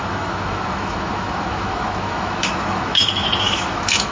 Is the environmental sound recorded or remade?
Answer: remade